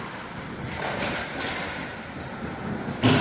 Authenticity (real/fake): real